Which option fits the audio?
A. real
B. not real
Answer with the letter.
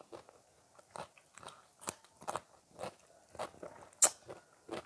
A